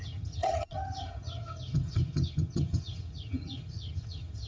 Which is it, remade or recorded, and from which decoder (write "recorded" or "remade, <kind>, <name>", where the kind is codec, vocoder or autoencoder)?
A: remade, vocoder, HiFi-GAN